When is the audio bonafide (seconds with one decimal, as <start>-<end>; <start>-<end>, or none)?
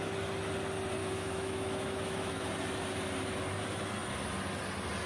0.0-1.0; 2.5-5.1